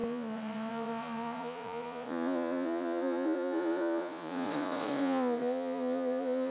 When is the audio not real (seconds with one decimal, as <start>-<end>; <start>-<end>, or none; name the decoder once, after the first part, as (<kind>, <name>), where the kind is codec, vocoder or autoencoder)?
0.0-6.5 (vocoder, Vocos)